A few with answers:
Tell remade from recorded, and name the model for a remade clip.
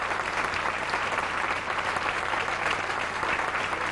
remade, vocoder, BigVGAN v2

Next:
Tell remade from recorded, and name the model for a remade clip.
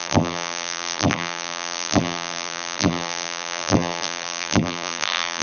remade, vocoder, BigVGAN v2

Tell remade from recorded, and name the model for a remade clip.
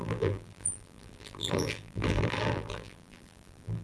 remade, vocoder, BigVGAN v2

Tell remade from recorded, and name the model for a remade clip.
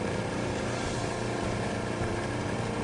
remade, vocoder, BigVGAN v2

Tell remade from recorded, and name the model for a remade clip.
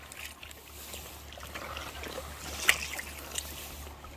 recorded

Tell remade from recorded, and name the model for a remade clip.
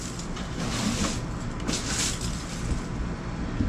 recorded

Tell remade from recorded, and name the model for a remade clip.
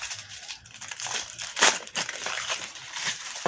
remade, vocoder, BigVGAN v2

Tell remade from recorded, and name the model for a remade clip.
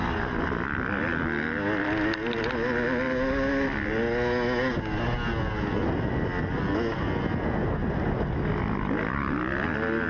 recorded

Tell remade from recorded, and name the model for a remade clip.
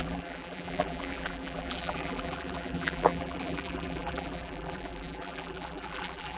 remade, vocoder, BigVGAN v2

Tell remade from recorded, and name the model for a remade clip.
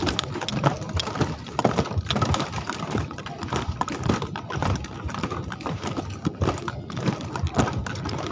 recorded